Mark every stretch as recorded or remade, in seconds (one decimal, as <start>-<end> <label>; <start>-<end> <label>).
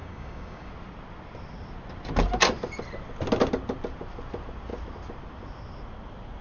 0.0-0.7 remade; 0.7-6.4 recorded